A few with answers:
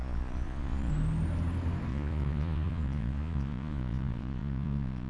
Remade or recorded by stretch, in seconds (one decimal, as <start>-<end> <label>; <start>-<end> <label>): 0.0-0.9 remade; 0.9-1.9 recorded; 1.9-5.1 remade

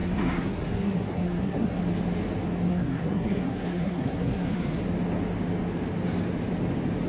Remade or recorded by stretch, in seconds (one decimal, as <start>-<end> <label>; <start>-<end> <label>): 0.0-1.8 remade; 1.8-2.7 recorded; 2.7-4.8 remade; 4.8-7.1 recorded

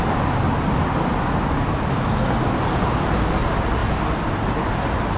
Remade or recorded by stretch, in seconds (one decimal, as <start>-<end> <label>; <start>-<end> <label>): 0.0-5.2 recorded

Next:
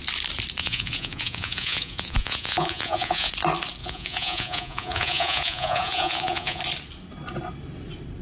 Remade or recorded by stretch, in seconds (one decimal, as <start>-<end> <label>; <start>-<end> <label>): 0.0-0.6 recorded; 0.6-3.3 remade; 3.3-3.8 recorded; 3.8-6.6 remade; 6.6-8.2 recorded

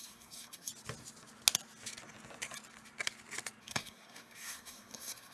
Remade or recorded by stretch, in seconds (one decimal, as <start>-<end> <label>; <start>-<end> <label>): 0.0-0.7 remade; 0.7-3.6 recorded; 3.6-5.3 remade

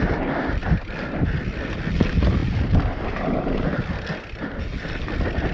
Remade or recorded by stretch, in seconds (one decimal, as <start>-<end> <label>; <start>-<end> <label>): 0.0-5.5 recorded

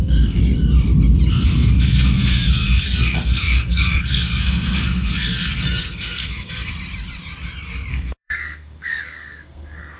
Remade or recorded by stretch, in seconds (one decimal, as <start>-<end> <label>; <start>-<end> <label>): 0.0-0.4 remade; 0.4-1.3 recorded; 1.3-6.7 remade; 6.7-7.9 recorded; 7.9-10.0 remade

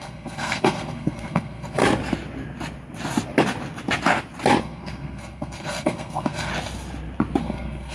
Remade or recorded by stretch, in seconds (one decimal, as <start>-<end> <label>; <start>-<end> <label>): 0.0-1.8 remade; 1.8-4.6 recorded; 4.6-6.5 remade; 6.5-7.4 recorded; 7.4-7.9 remade